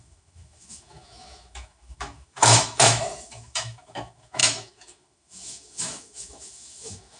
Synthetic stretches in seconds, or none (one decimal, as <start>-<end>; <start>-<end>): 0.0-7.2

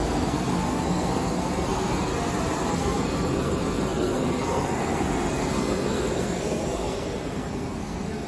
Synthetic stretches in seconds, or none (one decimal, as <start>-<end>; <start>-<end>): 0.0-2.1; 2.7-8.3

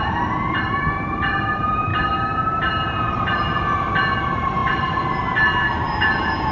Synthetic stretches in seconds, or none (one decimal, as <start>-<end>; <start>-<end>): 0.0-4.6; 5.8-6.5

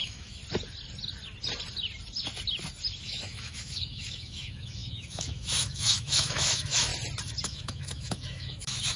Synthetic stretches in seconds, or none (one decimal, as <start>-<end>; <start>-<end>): 0.0-0.4; 3.0-6.9; 7.4-9.0